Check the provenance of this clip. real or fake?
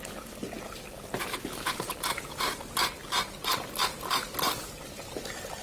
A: real